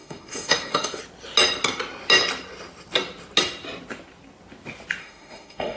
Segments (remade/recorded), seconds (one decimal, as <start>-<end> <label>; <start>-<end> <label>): 0.0-1.0 remade; 1.0-5.0 recorded; 5.0-5.8 remade